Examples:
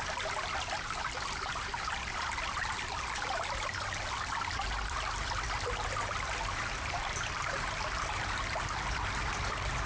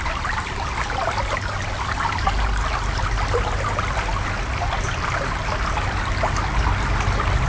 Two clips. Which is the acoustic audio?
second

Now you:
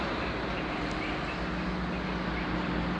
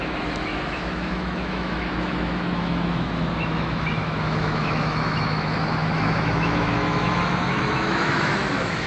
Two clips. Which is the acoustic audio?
first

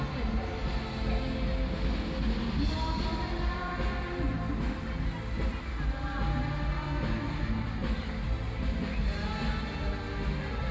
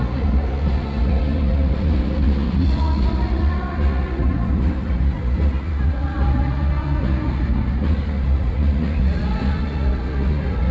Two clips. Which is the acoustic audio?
first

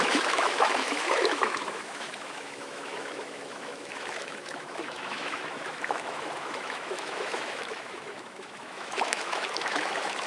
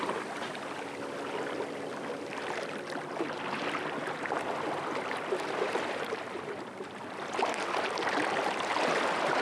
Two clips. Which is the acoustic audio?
second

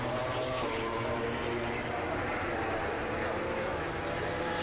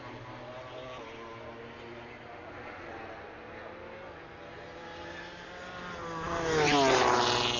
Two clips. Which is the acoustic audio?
second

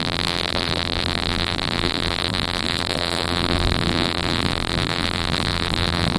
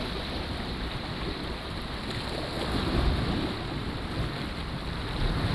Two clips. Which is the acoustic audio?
second